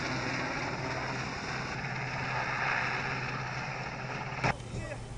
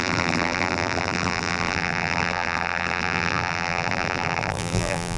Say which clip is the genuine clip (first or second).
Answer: first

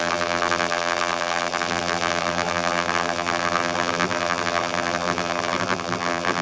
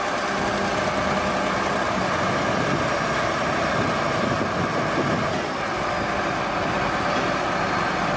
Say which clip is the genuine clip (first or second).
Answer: second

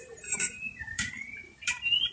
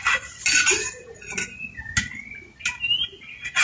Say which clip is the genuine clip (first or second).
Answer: second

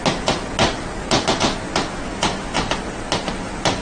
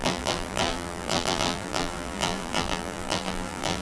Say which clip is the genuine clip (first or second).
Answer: first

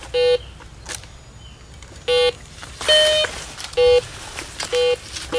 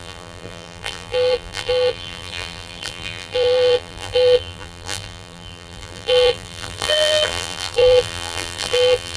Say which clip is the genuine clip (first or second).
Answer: first